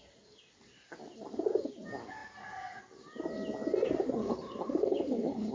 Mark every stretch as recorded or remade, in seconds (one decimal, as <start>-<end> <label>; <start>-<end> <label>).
0.0-4.2 recorded; 4.2-5.5 remade